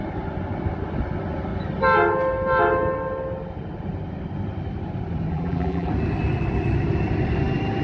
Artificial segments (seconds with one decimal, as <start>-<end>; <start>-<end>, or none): 5.3-5.9